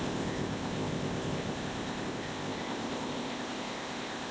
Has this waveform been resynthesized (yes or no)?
yes